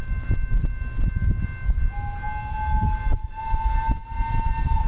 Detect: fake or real real